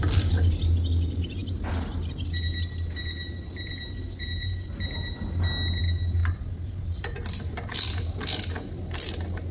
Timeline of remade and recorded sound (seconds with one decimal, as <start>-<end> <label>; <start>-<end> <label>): 0.0-9.5 recorded